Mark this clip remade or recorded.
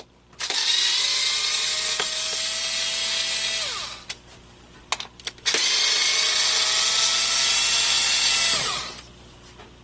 recorded